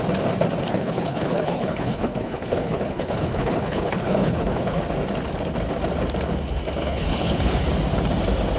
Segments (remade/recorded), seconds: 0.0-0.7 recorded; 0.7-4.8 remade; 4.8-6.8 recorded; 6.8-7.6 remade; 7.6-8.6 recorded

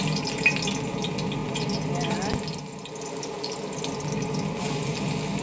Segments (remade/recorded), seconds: 0.0-5.4 recorded

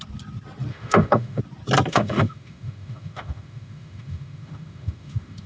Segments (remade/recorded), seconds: 0.0-0.7 recorded; 0.7-1.4 remade; 1.4-1.9 recorded; 1.9-5.5 remade

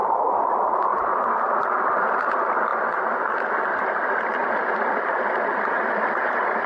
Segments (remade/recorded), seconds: 0.0-6.7 recorded